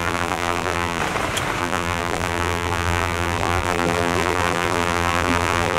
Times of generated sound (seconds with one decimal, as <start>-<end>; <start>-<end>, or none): 0.0-1.0; 1.6-5.8